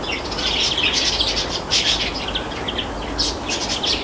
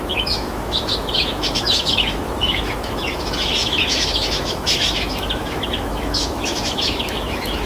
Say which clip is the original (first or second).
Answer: first